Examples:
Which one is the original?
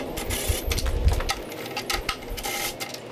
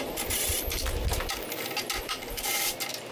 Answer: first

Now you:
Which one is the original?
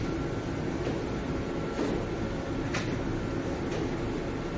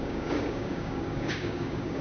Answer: first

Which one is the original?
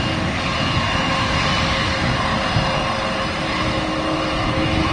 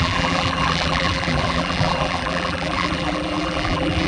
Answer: first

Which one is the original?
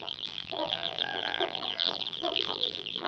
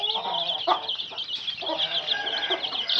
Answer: second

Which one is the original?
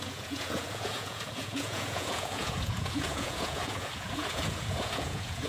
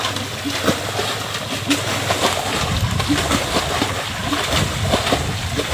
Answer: second